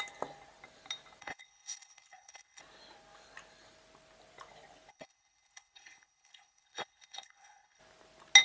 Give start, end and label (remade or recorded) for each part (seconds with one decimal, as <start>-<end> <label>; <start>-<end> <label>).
0.0-1.2 recorded; 1.2-2.6 remade; 2.6-4.9 recorded; 4.9-7.8 remade; 7.8-8.4 recorded